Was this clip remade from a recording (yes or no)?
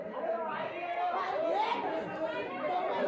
no